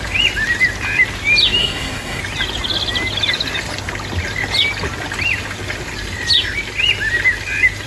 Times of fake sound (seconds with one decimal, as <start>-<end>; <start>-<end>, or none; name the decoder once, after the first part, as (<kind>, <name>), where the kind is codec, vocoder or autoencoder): 1.6-2.2 (codec, SNAC)